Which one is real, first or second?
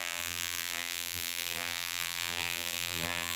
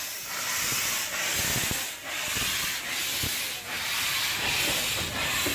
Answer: second